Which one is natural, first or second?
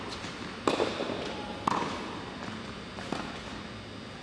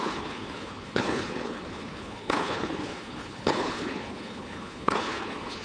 first